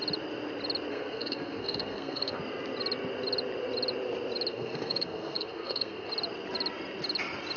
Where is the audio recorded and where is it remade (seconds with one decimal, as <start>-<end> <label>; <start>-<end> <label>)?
0.0-0.9 recorded; 0.9-2.4 remade; 2.4-4.5 recorded; 4.5-6.1 remade; 6.1-7.6 recorded